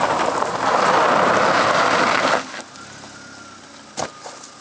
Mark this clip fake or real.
real